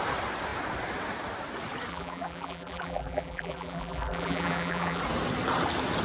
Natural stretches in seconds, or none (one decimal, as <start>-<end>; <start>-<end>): 0.0-1.9; 5.0-6.0